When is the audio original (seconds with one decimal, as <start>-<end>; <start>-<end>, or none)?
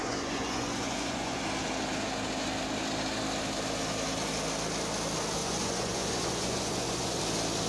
1.4-5.4; 7.2-7.7